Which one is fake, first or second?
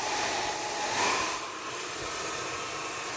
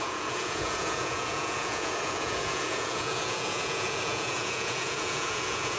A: second